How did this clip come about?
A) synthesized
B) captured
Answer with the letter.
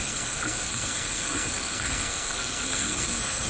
A